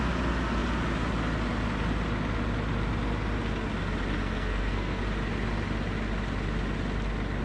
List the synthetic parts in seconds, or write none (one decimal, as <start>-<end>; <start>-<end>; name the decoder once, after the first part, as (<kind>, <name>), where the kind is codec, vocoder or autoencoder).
4.2-5.0 (codec, SNAC)